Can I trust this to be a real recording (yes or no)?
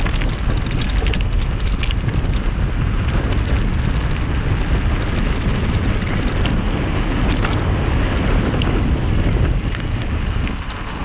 yes